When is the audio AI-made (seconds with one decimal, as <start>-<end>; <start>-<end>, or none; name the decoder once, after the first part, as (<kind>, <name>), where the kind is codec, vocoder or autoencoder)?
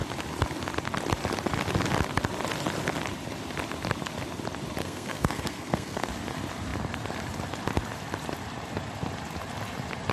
4.8-6.1 (codec, SNAC)